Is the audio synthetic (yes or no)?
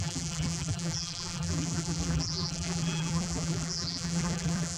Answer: yes